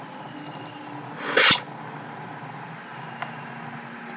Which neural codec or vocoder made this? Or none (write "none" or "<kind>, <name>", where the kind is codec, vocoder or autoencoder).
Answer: none